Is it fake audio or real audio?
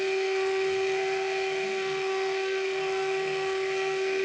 fake